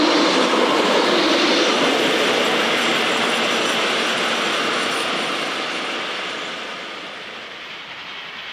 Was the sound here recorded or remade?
recorded